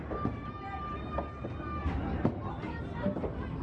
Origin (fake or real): real